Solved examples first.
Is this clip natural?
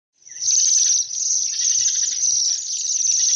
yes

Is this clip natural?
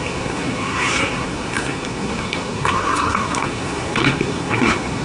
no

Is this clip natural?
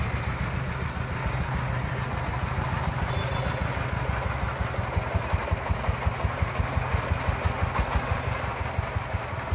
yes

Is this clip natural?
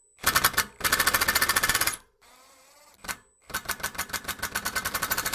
yes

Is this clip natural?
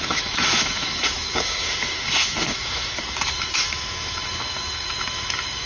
no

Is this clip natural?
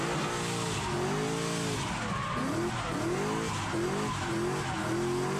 yes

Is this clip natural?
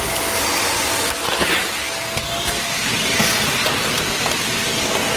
yes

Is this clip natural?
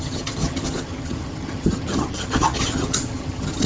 no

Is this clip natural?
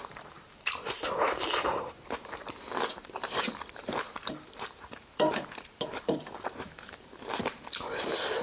no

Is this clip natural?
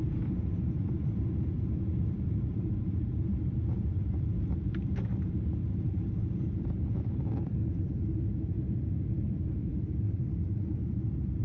no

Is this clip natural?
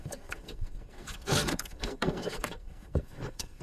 no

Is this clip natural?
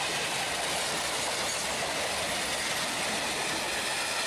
yes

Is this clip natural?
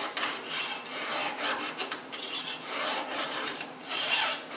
no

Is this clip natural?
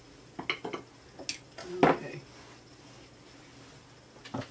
yes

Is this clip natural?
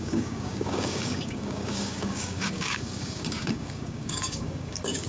no